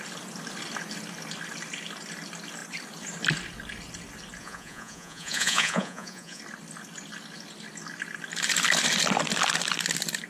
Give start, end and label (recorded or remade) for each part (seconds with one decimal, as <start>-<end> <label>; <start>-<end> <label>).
0.0-4.4 recorded; 4.4-6.4 remade; 6.4-10.3 recorded